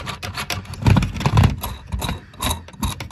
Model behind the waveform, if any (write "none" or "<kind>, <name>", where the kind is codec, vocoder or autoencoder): none